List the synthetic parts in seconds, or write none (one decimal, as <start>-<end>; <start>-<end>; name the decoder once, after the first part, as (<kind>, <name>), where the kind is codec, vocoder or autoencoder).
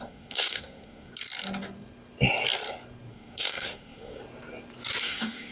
0.0-1.1 (codec, SNAC); 3.1-4.2; 5.0-5.5